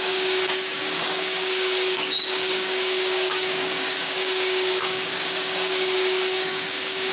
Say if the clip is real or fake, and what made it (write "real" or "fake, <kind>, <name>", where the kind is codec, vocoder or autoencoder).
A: fake, codec, DAC